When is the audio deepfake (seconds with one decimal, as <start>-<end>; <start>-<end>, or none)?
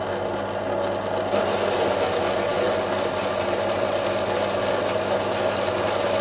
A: none